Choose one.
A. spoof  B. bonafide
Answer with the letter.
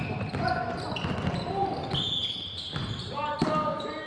B